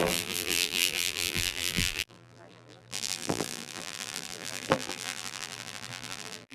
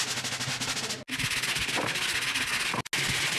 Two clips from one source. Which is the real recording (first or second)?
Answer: second